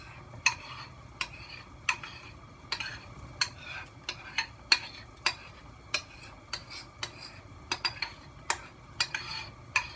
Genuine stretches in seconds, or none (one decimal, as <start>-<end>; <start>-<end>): 0.0-10.0